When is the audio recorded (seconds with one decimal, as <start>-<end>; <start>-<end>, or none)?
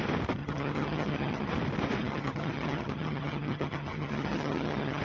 0.0-0.4; 1.5-2.0